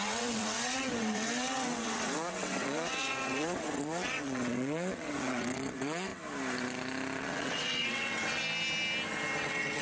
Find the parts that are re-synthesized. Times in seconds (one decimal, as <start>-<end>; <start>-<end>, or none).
0.0-6.1; 7.2-8.4; 9.4-9.8